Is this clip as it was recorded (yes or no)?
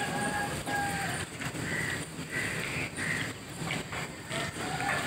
yes